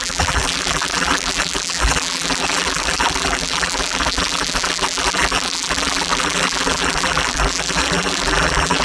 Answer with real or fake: fake